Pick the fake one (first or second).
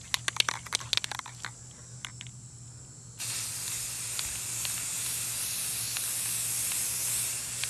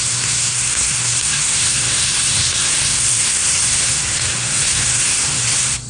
second